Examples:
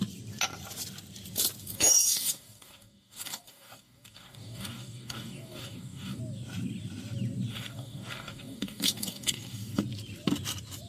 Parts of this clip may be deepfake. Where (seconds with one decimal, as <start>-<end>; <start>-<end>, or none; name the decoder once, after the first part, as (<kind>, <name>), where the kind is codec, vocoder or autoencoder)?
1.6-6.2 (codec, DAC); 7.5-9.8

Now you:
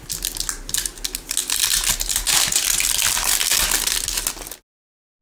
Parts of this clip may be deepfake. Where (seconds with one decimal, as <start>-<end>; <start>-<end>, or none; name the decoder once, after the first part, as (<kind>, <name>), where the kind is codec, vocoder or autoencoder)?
none

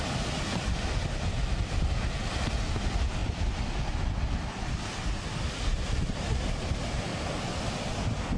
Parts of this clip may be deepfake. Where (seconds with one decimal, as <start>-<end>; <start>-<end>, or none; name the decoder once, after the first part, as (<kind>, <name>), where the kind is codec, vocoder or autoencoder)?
none

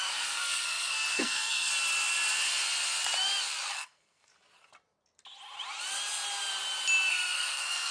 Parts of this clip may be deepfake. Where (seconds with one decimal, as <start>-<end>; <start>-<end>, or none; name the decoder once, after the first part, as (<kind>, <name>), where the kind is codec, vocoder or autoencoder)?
0.0-1.7 (codec, SNAC); 3.7-4.3; 7.1-7.9

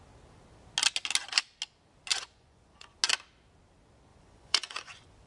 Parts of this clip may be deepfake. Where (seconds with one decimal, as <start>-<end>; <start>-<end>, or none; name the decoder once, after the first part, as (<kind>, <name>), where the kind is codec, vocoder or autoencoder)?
2.1-3.0 (vocoder, Vocos); 4.1-5.3